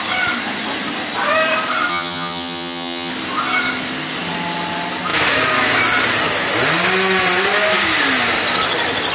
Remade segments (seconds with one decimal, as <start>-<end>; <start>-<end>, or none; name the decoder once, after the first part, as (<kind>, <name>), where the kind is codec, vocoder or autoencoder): 1.9-3.1 (vocoder, HiFi-GAN)

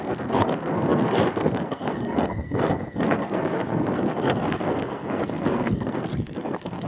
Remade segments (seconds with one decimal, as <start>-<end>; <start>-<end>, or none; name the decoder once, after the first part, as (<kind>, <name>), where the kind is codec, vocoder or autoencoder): 0.0-6.9 (codec, SNAC)

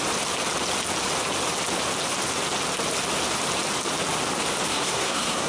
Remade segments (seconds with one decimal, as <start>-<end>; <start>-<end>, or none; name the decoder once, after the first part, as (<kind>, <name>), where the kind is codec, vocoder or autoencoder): 4.7-5.5 (codec, SNAC)

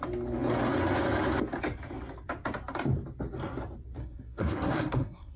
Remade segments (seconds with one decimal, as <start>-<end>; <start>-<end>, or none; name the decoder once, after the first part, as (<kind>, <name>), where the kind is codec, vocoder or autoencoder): 4.0-5.4 (codec, SNAC)